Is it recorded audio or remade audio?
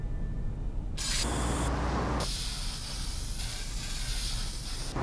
recorded